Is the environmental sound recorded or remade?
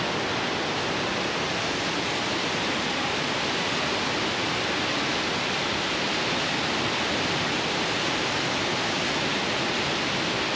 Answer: recorded